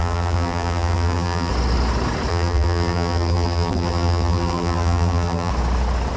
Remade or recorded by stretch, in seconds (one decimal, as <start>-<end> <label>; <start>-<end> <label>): 0.0-1.5 remade; 1.5-2.3 recorded; 2.3-5.5 remade; 5.5-6.2 recorded